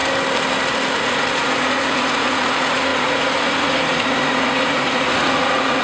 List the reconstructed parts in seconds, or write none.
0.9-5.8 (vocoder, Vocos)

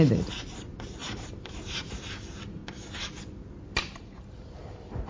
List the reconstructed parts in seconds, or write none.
0.0-2.6 (vocoder, BigVGAN v2); 3.9-5.1

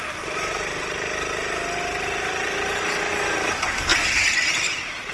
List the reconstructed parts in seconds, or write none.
3.9-4.6 (vocoder, BigVGAN v2)

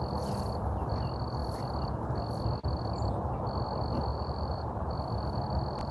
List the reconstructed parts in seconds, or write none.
4.1-4.9 (vocoder, BigVGAN v2)

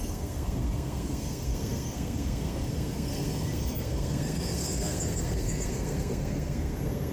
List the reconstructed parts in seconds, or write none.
0.0-7.1 (codec, SNAC)

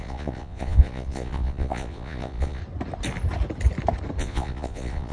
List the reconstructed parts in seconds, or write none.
0.0-2.6 (vocoder, Vocos); 4.2-5.1

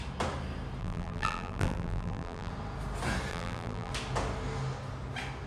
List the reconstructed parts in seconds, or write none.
0.8-2.5 (vocoder, BigVGAN v2); 3.3-3.9